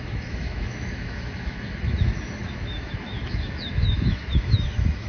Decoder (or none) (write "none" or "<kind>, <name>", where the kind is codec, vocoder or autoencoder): autoencoder, DAC-VAE